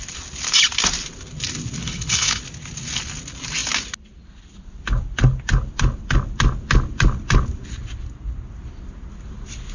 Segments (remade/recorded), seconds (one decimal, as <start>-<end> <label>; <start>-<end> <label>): 0.0-1.8 recorded; 1.8-2.4 remade; 2.4-9.7 recorded